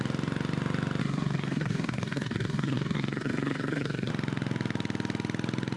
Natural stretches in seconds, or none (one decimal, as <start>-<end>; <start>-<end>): 0.0-1.0; 4.1-5.8